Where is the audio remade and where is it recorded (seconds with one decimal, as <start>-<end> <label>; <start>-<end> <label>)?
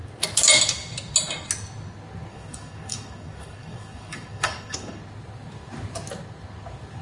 0.0-2.3 recorded; 2.3-5.0 remade; 5.0-7.0 recorded